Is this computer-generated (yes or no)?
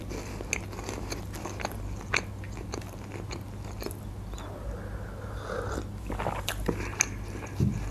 no